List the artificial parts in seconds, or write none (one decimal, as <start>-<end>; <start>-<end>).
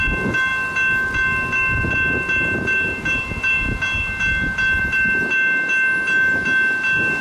none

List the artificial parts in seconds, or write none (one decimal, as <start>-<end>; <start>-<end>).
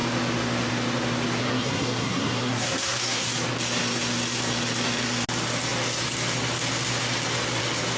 1.4-3.3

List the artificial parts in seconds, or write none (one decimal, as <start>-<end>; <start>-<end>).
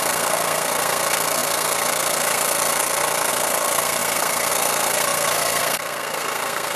0.0-6.8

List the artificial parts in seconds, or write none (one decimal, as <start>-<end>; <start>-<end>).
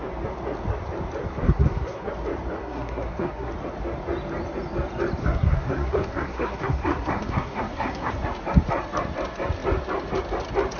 1.2-2.1; 2.6-3.5; 5.2-8.1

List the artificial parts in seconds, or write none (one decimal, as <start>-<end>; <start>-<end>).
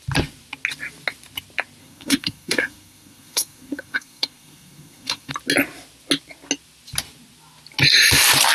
1.8-5.3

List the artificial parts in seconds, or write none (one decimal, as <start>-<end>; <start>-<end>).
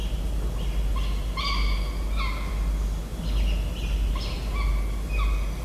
none